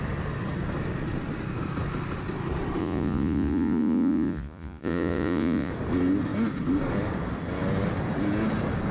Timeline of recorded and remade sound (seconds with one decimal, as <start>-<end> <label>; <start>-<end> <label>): 0.0-2.8 recorded; 2.8-5.7 remade; 5.7-8.9 recorded